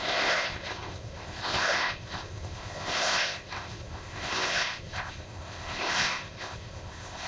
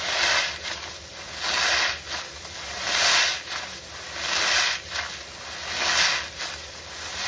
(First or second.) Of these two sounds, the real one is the second